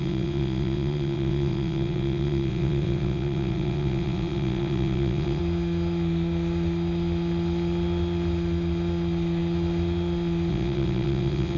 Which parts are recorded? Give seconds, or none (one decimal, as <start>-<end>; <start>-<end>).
5.4-10.5